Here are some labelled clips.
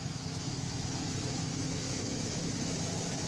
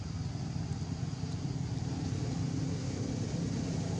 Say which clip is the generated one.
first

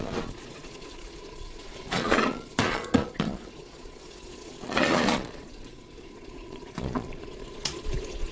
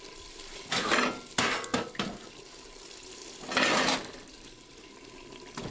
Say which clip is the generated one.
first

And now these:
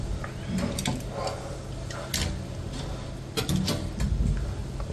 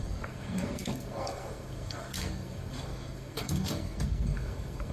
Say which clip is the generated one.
second